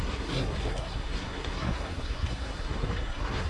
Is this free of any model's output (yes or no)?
no